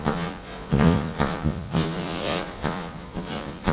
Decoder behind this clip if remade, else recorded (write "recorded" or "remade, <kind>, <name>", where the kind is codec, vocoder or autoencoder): remade, vocoder, Vocos